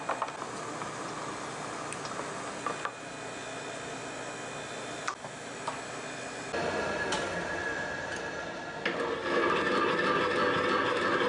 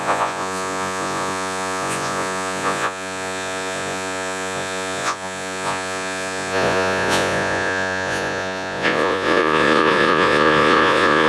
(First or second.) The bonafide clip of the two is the first